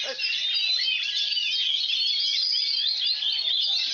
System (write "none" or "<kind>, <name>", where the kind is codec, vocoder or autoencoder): none